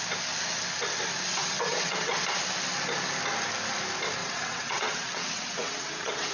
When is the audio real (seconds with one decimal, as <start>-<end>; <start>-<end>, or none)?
0.0-1.4; 2.2-4.2